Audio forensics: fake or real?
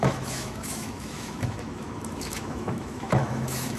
fake